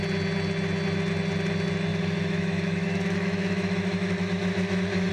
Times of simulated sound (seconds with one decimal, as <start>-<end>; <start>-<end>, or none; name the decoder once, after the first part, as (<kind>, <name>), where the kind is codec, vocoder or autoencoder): 1.9-5.1 (autoencoder, DAC-VAE)